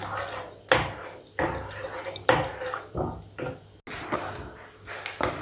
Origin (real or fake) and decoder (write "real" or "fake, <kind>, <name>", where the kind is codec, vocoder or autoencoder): real